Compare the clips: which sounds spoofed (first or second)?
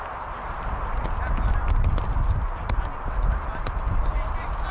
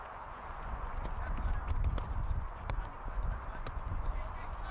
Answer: second